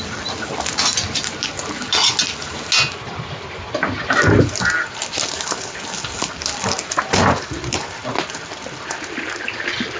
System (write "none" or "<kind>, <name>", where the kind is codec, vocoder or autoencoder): none